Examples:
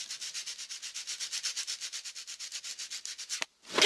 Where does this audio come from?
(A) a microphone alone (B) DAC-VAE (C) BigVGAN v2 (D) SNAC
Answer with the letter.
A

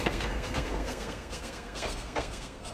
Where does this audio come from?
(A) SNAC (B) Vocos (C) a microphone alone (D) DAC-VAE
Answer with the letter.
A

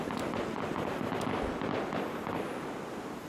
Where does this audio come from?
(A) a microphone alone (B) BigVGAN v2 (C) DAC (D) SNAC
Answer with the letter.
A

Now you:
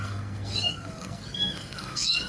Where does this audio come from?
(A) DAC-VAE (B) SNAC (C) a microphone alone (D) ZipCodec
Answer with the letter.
B